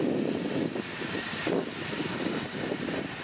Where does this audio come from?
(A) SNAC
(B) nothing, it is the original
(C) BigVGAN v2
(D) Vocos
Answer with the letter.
B